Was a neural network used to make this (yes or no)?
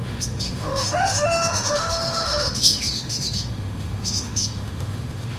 yes